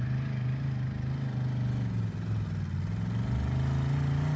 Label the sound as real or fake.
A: real